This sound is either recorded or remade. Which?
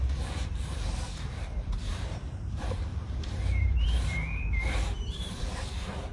remade